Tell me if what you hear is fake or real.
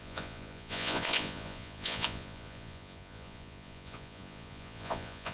fake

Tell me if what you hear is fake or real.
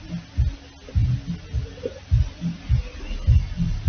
real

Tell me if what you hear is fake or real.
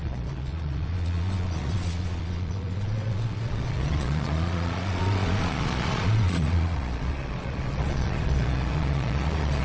fake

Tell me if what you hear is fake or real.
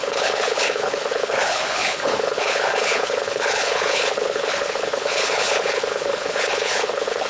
fake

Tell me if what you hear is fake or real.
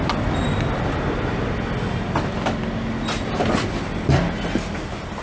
real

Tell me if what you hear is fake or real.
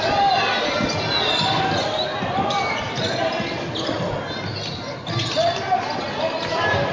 real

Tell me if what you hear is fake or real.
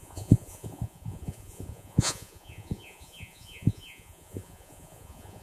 fake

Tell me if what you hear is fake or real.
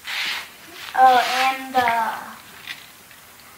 real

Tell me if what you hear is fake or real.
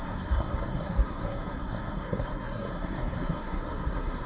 fake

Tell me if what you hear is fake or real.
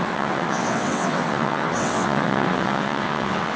fake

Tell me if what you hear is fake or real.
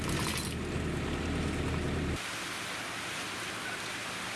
real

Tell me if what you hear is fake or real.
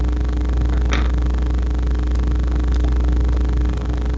real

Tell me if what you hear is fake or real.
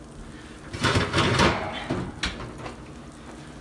real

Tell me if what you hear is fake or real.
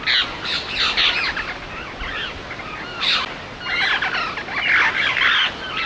real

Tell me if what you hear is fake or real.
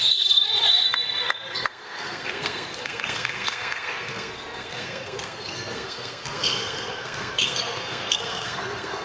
fake